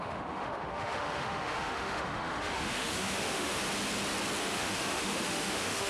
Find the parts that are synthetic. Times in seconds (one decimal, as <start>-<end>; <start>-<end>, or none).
0.0-3.6; 4.4-5.9